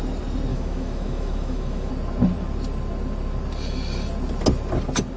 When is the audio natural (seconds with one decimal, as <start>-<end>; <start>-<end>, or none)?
0.0-0.5; 1.9-5.2